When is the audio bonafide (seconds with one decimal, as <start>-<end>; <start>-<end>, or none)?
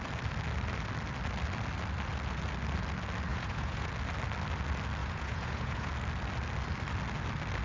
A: 0.0-3.3; 3.9-5.0; 5.9-7.6